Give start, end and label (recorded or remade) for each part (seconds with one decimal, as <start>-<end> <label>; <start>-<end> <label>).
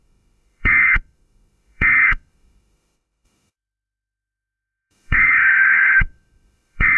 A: 0.0-7.0 remade